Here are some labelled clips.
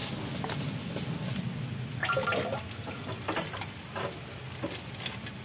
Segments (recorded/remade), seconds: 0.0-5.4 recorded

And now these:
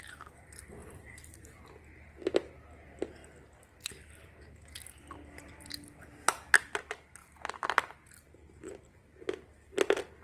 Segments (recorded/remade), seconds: 0.0-0.8 recorded; 0.8-1.6 remade; 1.6-10.2 recorded